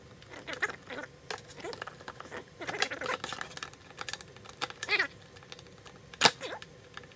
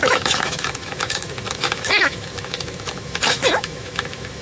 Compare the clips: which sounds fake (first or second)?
second